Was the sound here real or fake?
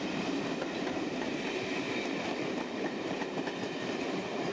fake